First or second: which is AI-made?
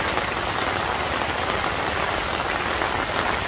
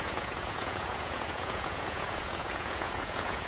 second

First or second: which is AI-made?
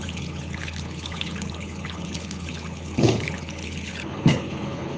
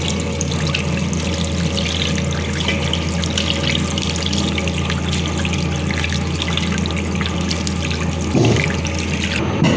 first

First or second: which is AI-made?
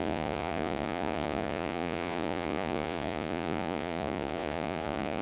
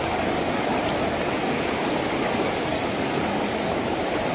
first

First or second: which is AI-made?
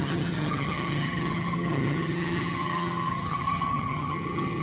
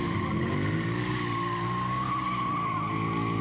first